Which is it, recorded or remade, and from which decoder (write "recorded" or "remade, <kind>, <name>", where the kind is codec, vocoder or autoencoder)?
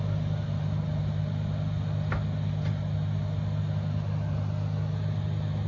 recorded